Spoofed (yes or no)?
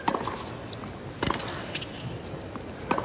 no